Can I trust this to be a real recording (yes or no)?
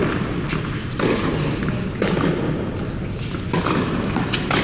yes